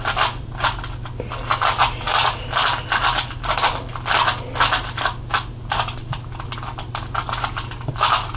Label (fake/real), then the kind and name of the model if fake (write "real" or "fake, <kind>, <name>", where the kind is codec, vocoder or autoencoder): real